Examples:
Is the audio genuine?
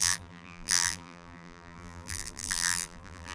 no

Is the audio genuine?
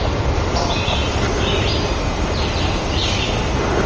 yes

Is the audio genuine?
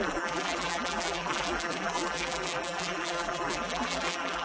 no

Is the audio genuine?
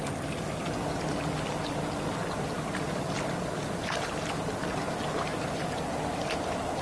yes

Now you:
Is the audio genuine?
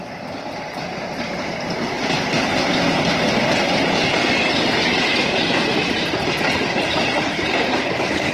yes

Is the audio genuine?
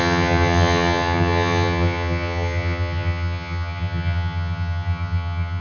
no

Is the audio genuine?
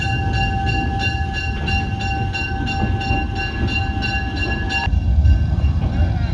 yes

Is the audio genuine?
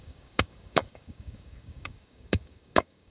no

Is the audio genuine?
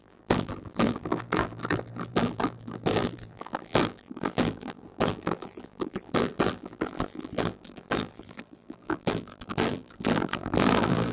no